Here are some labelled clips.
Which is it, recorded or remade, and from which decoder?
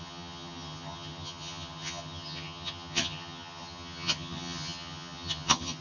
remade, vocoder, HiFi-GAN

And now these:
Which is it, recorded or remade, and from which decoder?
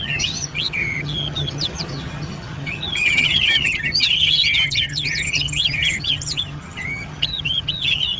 remade, vocoder, HiFi-GAN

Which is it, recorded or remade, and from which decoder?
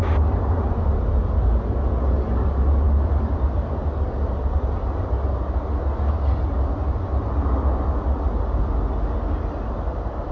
recorded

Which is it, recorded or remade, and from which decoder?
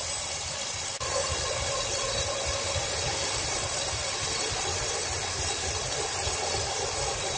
recorded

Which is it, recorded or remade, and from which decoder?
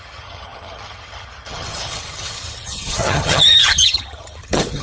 remade, vocoder, HiFi-GAN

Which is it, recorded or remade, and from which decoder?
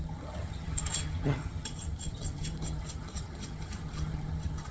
remade, vocoder, HiFi-GAN